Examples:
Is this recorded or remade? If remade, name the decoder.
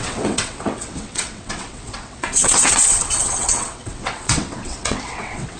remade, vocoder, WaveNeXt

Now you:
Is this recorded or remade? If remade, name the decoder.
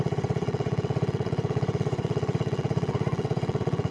remade, vocoder, WaveNeXt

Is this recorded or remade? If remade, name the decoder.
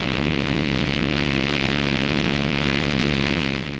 remade, vocoder, WaveNeXt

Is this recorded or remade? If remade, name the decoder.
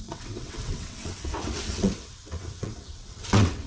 remade, vocoder, WaveNeXt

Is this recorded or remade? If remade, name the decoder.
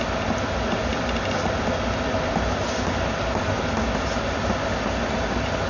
recorded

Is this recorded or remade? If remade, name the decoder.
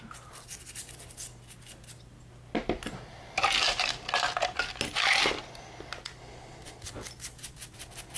recorded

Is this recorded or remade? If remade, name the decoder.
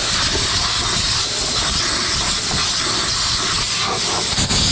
recorded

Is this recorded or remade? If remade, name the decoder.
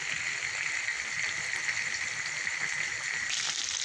recorded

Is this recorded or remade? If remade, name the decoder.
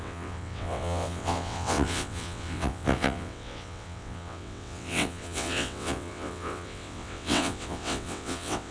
remade, vocoder, WaveNeXt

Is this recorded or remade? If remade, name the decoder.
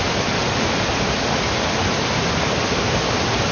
recorded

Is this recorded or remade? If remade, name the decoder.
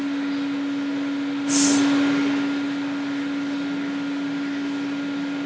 recorded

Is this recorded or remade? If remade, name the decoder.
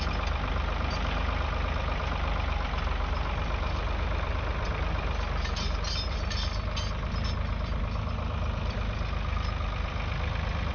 recorded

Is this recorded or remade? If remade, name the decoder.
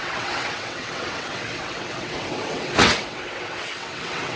remade, vocoder, WaveNeXt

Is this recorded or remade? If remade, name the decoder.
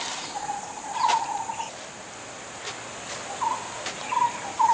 recorded